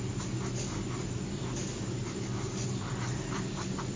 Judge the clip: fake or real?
real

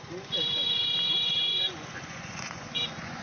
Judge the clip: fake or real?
fake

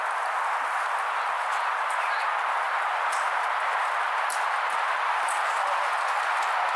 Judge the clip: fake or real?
real